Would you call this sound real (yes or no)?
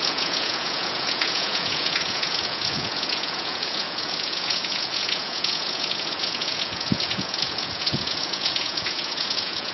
no